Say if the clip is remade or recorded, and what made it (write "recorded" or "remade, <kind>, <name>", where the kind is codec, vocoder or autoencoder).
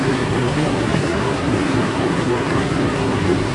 remade, codec, SNAC